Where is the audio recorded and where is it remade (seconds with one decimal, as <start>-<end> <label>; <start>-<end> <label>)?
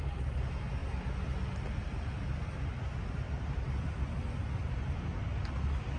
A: 0.0-0.8 recorded; 0.8-4.1 remade; 4.1-4.6 recorded; 4.6-5.3 remade; 5.3-6.0 recorded